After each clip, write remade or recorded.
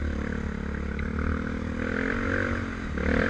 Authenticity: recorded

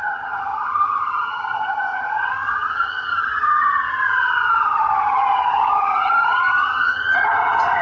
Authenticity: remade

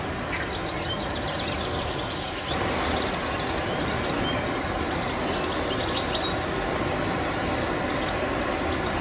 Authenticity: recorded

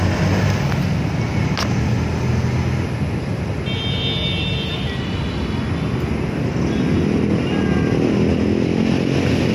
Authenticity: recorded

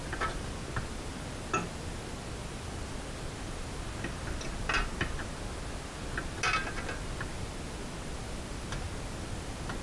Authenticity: recorded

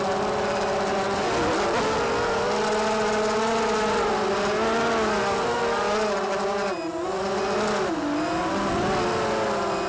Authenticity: recorded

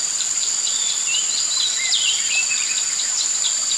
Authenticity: remade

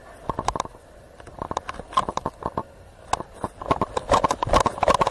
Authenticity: recorded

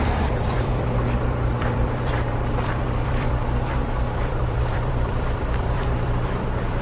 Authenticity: remade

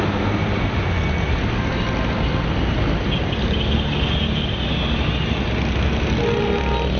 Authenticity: recorded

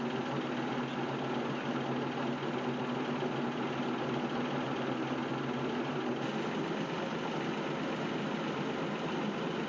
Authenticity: recorded